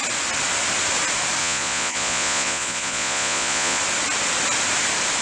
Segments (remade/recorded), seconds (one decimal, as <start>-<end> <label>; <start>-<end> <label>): 0.0-1.4 recorded; 1.4-3.8 remade; 3.8-5.2 recorded